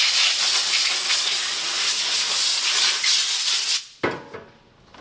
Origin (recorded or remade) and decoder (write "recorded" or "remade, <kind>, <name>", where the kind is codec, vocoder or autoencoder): recorded